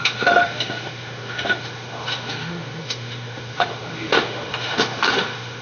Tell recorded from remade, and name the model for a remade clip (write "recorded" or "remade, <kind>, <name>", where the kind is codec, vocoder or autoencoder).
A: remade, autoencoder, DAC-VAE